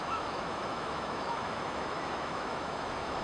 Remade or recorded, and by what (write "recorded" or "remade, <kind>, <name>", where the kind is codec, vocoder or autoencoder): remade, autoencoder, DAC-VAE